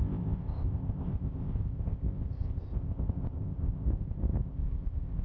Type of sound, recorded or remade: remade